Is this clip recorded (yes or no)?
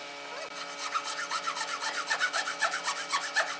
yes